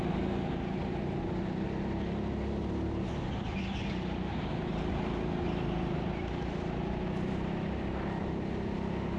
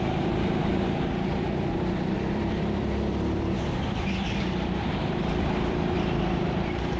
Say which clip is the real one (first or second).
first